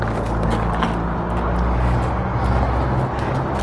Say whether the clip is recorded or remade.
recorded